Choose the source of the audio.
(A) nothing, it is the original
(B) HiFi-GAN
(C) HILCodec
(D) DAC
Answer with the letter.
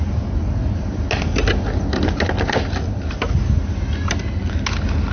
A